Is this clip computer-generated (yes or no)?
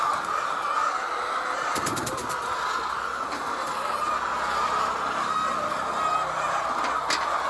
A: no